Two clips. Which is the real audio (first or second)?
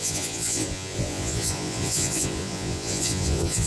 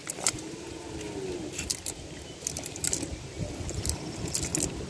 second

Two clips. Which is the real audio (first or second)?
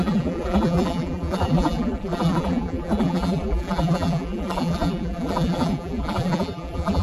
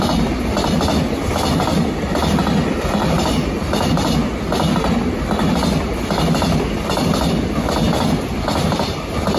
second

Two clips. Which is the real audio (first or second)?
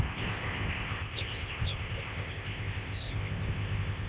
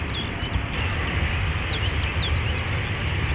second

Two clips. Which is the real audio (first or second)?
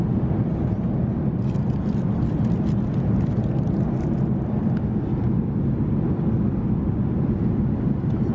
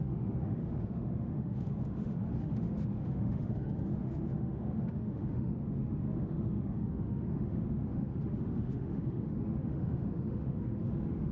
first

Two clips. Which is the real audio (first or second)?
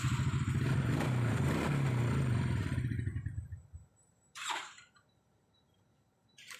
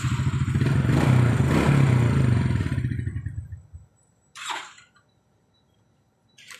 second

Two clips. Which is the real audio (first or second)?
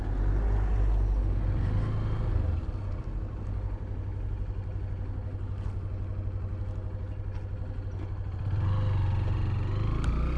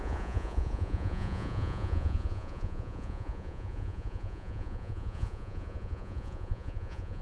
first